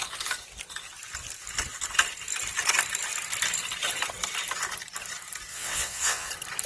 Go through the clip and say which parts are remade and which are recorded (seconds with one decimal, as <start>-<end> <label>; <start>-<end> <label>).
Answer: 0.0-5.5 recorded; 5.5-6.3 remade; 6.3-6.7 recorded